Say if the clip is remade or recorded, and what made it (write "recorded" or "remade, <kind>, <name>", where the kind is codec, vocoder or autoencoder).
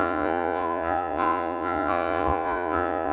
remade, vocoder, Vocos